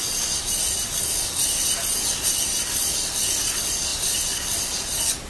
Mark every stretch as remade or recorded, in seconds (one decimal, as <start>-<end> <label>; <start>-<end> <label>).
0.0-5.3 recorded